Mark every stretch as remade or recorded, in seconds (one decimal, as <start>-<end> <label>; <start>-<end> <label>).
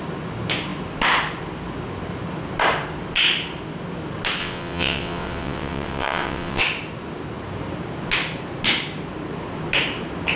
0.0-4.4 recorded; 4.4-6.6 remade; 6.6-10.4 recorded